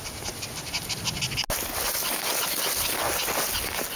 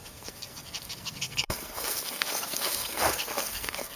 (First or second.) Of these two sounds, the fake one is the second